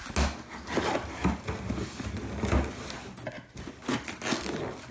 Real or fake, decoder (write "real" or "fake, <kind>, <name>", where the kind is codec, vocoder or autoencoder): real